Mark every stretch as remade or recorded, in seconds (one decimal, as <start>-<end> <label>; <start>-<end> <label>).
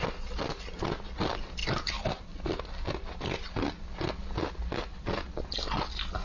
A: 0.0-6.2 recorded